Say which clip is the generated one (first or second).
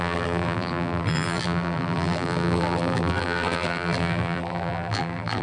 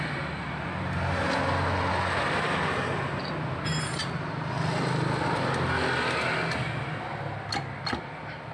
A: first